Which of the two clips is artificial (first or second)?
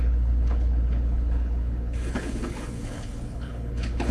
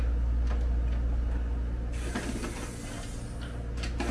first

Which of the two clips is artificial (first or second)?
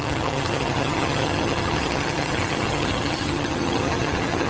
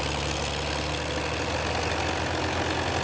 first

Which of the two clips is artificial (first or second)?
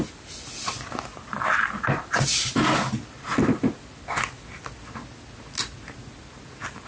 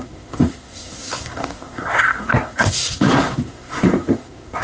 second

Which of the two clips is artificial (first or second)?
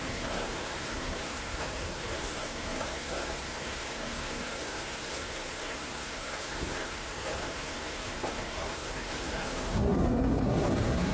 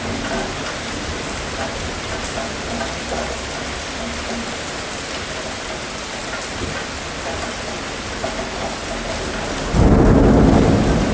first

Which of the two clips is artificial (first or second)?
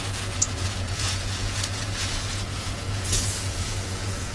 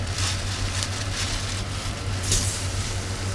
first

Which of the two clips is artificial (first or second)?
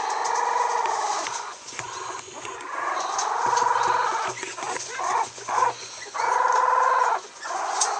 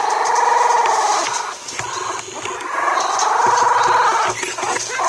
first